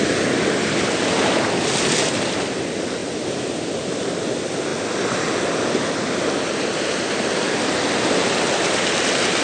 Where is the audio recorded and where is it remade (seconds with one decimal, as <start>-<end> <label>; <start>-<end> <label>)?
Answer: 0.0-9.4 recorded